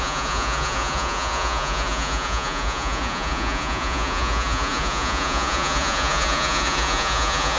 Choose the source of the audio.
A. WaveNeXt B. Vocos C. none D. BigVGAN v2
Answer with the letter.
B